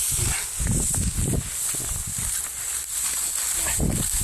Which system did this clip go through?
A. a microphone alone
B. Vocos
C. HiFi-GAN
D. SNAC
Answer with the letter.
A